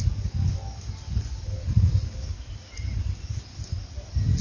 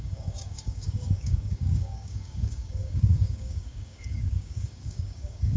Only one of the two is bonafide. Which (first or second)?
first